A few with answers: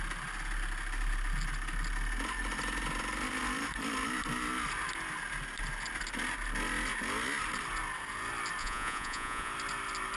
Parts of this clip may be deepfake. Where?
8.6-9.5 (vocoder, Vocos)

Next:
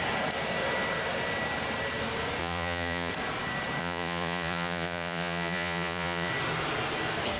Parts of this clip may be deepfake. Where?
2.4-3.1 (vocoder, Vocos); 3.8-6.3